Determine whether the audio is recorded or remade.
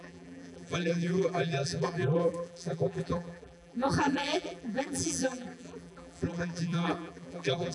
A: remade